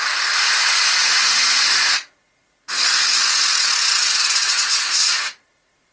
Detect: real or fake fake